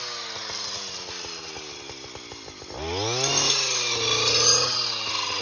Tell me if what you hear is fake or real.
real